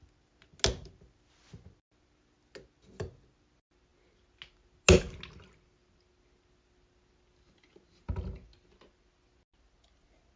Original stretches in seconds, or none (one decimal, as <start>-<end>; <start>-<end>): 0.0-10.4